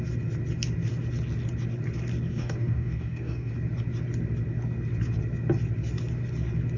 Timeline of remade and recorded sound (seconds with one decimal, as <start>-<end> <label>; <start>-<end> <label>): 0.0-2.3 recorded; 2.3-3.5 remade; 3.5-6.8 recorded